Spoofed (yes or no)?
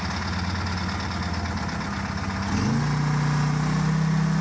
no